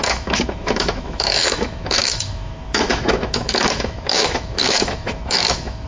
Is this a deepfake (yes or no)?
yes